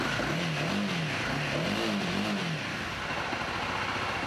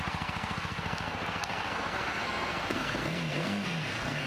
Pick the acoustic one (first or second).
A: first